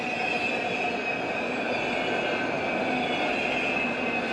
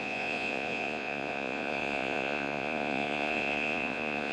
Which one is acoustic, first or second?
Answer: first